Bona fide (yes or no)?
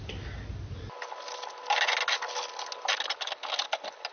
yes